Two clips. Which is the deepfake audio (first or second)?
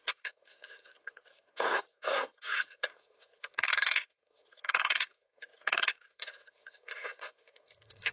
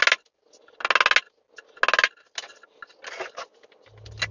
first